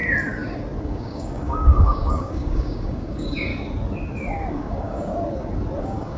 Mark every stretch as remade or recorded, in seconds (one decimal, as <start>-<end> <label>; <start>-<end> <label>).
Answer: 0.0-0.8 recorded; 0.8-3.5 remade; 3.5-4.5 recorded; 4.5-5.1 remade; 5.1-5.8 recorded; 5.8-6.2 remade